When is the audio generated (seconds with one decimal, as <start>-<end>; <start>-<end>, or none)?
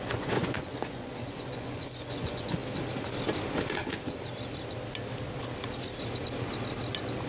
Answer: 0.0-2.6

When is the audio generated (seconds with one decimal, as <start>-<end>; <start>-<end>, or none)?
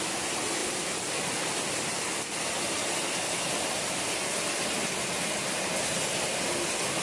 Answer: none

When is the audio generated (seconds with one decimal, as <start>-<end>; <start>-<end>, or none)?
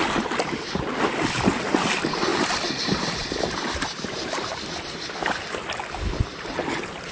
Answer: none